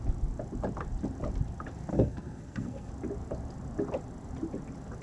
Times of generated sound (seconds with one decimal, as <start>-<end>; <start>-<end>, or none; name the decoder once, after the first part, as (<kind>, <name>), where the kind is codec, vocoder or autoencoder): 1.9-2.9 (codec, SNAC)